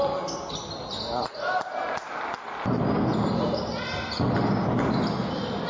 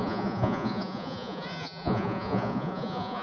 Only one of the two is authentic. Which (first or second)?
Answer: first